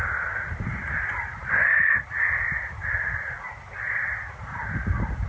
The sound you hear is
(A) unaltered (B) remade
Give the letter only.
A